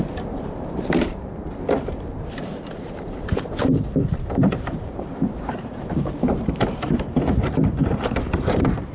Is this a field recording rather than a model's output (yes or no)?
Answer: no